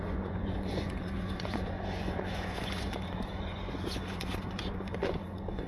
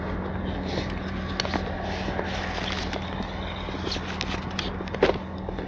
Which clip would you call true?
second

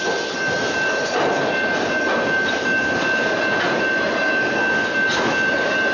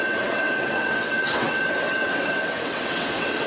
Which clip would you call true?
first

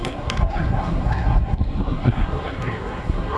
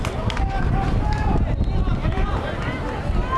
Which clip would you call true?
second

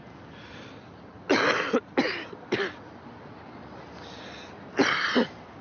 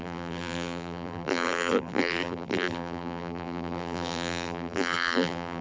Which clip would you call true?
first